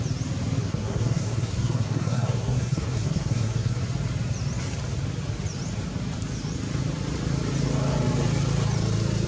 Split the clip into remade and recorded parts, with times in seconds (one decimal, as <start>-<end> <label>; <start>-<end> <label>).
0.0-0.6 recorded; 0.6-3.8 remade; 3.8-9.3 recorded